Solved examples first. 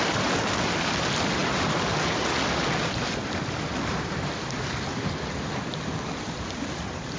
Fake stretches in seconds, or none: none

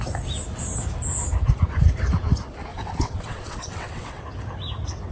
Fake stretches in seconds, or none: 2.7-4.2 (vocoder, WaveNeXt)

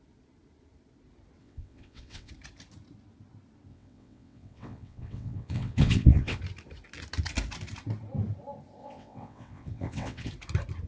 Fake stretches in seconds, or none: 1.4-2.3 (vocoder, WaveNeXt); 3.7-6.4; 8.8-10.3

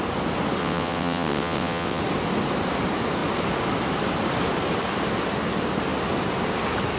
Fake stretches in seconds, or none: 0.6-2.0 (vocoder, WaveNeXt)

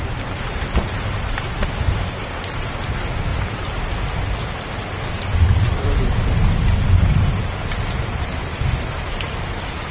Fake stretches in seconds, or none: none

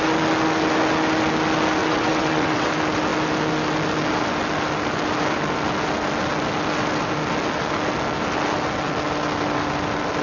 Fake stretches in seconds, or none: 1.8-2.7 (vocoder, WaveNeXt)